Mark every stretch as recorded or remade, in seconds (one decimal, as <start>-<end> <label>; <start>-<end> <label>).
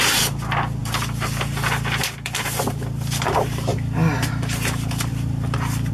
0.0-3.7 remade; 3.7-4.3 recorded; 4.3-5.1 remade; 5.1-5.9 recorded